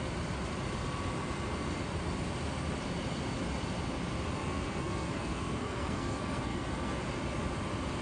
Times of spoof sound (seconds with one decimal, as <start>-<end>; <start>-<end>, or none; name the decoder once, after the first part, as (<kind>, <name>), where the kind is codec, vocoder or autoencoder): 4.4-7.0 (codec, SNAC)

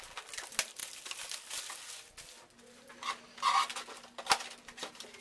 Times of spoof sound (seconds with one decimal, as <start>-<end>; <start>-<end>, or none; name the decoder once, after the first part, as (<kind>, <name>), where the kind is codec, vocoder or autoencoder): none

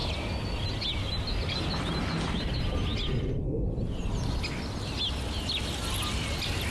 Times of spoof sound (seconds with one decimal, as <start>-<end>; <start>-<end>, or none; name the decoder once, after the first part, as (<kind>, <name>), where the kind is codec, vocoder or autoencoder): none